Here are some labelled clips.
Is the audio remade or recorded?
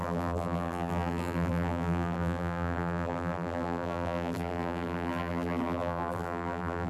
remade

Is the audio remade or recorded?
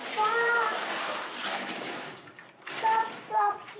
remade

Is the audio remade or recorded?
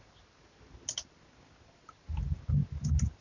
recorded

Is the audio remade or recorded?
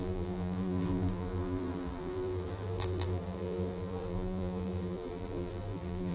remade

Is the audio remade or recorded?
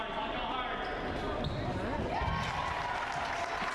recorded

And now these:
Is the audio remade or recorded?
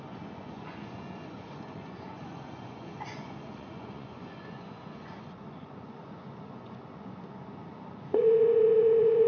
remade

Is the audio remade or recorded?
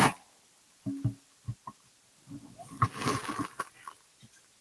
recorded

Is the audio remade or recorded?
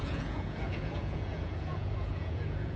remade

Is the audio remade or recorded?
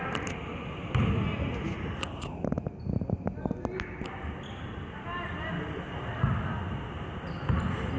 recorded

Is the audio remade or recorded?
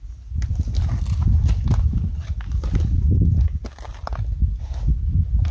recorded